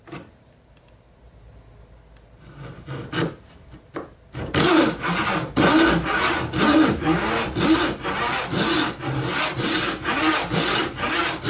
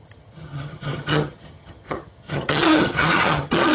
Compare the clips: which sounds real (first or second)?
first